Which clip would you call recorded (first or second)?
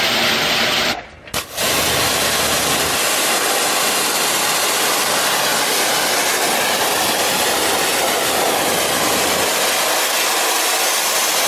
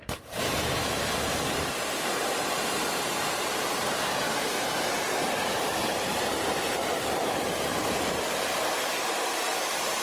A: first